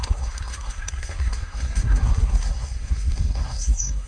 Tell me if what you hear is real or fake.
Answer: fake